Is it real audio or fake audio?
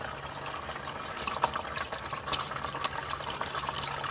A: real